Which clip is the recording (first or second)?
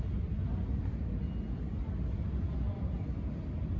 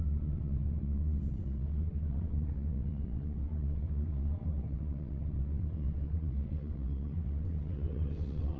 first